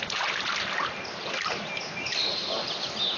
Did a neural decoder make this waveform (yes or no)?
no